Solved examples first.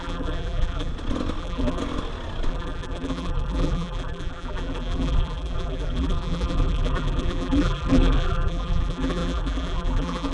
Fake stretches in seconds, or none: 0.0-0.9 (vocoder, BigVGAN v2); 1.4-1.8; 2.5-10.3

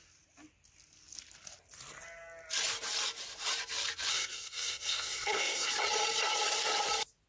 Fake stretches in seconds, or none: 4.1-5.7 (codec, SNAC)

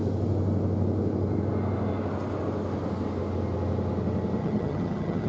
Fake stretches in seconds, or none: 4.4-5.3 (vocoder, HiFi-GAN)

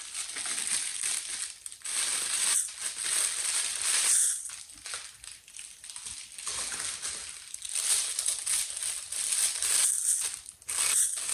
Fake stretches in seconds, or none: none

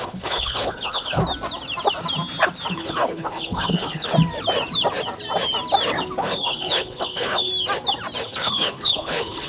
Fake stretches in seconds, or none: 0.0-1.2 (codec, HILCodec); 2.7-4.1; 6.2-7.5; 8.2-9.5

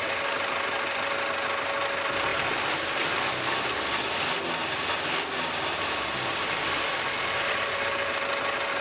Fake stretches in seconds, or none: none

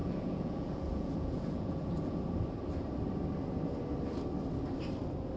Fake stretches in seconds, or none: 0.0-2.2 (vocoder, Vocos)

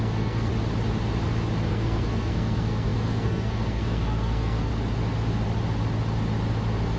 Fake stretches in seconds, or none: 0.0-0.5 (codec, SNAC); 1.7-4.7